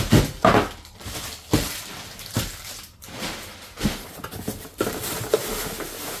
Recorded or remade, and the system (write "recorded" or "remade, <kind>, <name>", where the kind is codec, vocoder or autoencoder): recorded